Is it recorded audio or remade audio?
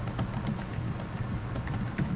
recorded